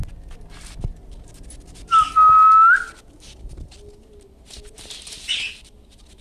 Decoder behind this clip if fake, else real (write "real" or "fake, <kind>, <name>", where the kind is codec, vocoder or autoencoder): real